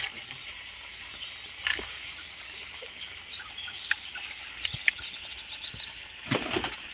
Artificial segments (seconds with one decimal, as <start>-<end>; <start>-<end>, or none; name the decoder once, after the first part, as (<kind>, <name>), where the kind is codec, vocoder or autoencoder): 1.7-4.4 (codec, DAC)